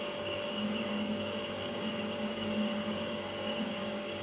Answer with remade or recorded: remade